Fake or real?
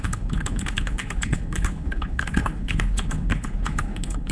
fake